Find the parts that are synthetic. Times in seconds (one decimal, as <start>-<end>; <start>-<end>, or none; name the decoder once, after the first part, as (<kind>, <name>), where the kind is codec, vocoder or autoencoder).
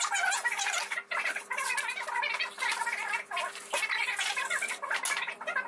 none